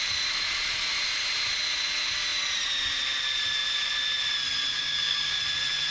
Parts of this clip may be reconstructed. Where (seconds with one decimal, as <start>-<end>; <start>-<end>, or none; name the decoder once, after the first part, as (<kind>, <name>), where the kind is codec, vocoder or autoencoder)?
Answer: 4.7-5.4 (codec, DAC)